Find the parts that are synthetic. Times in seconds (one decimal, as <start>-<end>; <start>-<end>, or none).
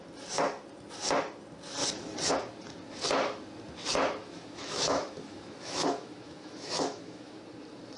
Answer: 4.2-7.4